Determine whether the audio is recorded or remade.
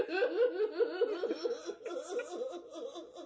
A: recorded